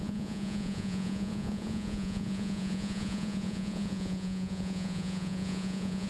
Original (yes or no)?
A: no